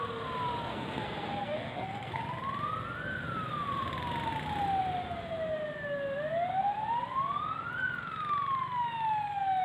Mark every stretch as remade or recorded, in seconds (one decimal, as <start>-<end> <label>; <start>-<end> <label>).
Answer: 0.0-0.7 recorded; 0.7-2.2 remade; 2.2-9.6 recorded